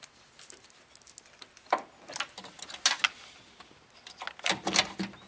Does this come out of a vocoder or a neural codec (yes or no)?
no